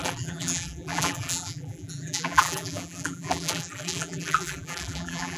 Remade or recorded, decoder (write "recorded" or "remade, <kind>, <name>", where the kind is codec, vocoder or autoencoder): remade, vocoder, BigVGAN v2